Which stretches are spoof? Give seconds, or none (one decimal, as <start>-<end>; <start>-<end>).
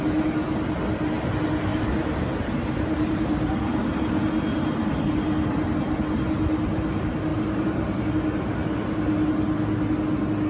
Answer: 1.7-3.5; 7.3-8.0